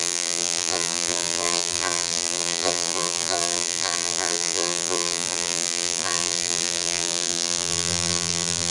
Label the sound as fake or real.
fake